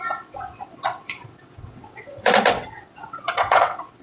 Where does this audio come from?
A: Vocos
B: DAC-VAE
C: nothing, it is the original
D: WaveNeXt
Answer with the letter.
D